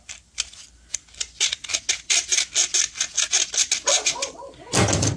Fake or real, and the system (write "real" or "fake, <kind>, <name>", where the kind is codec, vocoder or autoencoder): real